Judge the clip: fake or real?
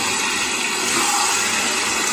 real